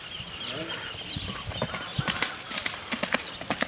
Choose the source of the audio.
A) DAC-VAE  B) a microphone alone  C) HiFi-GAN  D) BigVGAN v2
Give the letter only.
B